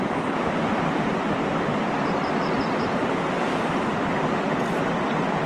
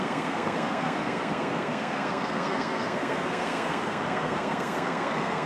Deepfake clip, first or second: second